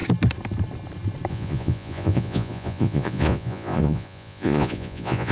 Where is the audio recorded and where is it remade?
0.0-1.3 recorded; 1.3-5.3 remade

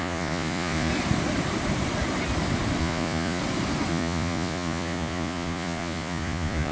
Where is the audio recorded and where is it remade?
0.0-0.9 remade; 0.9-2.8 recorded; 2.8-3.4 remade; 3.4-3.9 recorded; 3.9-6.7 remade